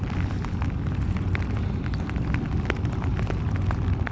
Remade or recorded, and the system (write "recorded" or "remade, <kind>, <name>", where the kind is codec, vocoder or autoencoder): recorded